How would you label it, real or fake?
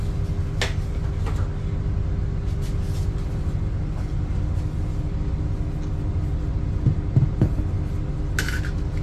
real